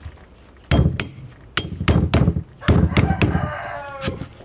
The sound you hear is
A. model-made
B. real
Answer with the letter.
B